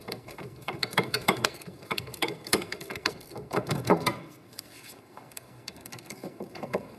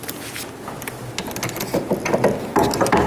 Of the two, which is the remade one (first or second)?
first